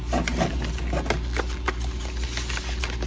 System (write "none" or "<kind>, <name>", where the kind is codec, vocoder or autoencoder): none